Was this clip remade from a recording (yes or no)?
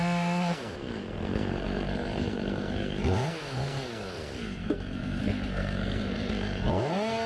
yes